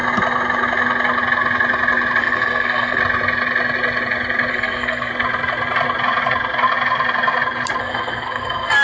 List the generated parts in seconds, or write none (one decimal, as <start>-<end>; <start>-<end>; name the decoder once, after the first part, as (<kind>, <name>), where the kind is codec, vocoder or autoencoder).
2.2-3.0 (codec, SNAC); 4.5-5.1; 7.8-8.8